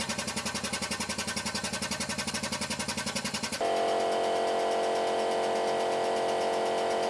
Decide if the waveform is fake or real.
real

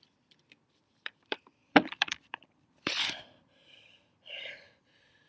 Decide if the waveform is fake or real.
fake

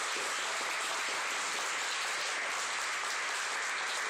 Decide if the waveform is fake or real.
real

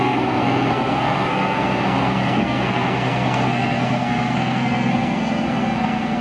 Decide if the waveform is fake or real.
fake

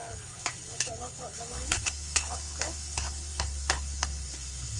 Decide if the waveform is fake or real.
fake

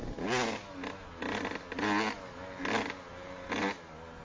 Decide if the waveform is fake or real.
real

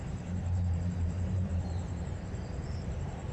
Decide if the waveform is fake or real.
fake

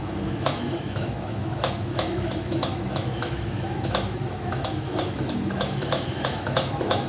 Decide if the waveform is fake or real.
fake